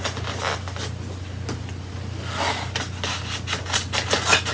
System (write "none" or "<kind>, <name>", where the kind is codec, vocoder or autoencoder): none